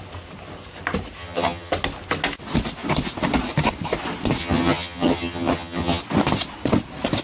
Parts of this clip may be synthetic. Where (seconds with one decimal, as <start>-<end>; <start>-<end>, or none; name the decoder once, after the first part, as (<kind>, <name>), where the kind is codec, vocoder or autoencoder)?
1.2-1.7 (vocoder, HiFi-GAN); 4.4-6.0